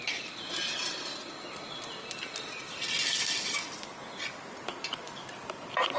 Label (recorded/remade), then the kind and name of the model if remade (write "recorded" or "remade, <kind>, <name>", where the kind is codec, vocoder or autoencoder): recorded